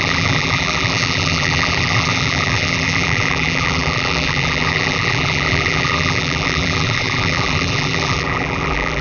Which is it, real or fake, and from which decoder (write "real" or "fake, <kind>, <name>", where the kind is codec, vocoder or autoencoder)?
fake, vocoder, BigVGAN v2